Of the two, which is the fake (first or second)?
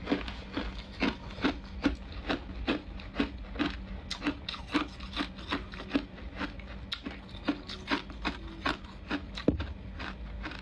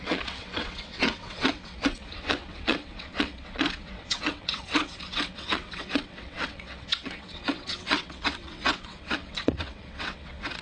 second